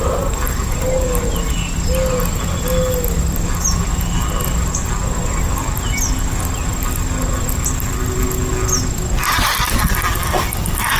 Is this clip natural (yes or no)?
yes